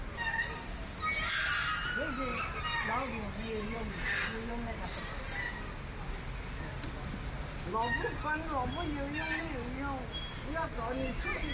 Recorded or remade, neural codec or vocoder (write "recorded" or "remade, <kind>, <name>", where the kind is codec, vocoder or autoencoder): recorded